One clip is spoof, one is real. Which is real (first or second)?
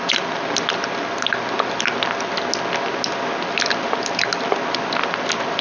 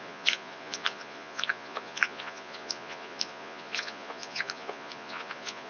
first